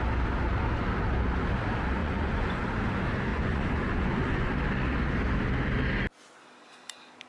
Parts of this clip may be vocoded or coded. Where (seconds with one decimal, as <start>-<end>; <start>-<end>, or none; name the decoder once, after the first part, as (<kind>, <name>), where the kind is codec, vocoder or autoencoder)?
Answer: 2.0-2.6 (vocoder, Vocos); 3.3-4.5